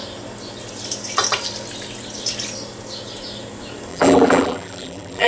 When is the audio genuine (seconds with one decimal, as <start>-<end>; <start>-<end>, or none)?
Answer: 0.0-3.9